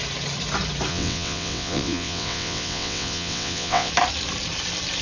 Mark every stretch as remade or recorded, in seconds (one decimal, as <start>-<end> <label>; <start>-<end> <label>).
0.0-0.9 recorded; 0.9-3.9 remade; 3.9-5.0 recorded